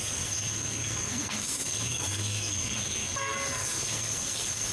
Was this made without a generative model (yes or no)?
no